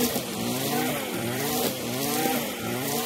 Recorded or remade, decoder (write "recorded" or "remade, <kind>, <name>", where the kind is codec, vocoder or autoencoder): remade, vocoder, BigVGAN v2